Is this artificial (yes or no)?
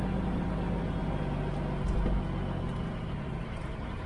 no